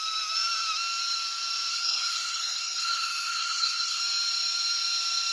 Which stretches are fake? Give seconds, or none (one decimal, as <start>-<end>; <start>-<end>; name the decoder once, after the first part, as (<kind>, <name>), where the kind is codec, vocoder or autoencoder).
1.7-4.0 (codec, SNAC)